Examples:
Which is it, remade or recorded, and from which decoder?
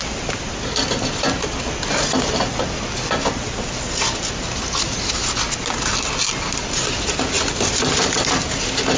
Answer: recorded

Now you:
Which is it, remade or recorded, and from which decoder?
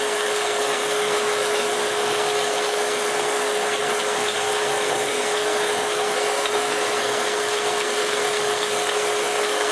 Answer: remade, codec, SNAC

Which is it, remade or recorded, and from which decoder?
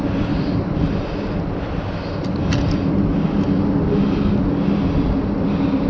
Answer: recorded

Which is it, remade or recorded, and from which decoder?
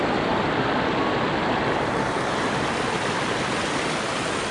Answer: recorded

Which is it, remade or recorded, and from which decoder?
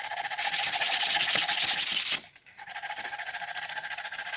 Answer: recorded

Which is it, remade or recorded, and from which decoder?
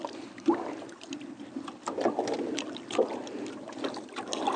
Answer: recorded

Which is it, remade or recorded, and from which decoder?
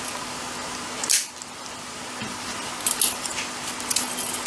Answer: recorded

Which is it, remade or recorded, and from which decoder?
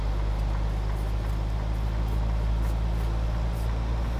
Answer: recorded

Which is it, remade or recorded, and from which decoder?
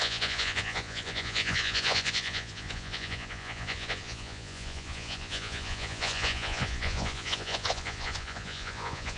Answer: remade, vocoder, Vocos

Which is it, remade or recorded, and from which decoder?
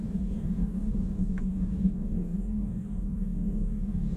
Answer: remade, codec, DAC